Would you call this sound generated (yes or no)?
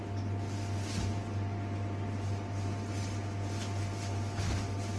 no